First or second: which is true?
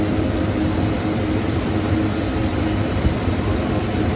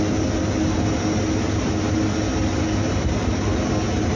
second